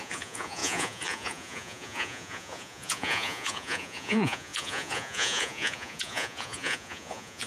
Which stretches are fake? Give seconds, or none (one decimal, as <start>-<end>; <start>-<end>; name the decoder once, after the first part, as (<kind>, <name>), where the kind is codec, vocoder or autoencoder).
0.0-7.5 (vocoder, Vocos)